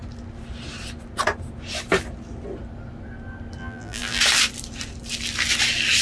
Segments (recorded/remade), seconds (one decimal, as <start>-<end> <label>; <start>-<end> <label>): 0.0-3.6 recorded; 3.6-4.2 remade; 4.2-6.0 recorded